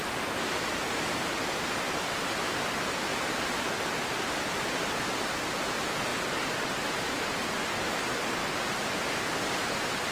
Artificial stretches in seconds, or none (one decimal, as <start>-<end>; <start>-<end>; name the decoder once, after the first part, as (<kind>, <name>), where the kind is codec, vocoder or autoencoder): 3.1-4.9 (vocoder, BigVGAN v2); 6.1-7.3; 8.4-9.1